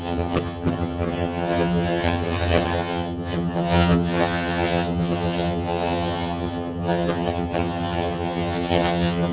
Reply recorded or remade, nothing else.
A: remade